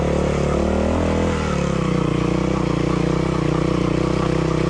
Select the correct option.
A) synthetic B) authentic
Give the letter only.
B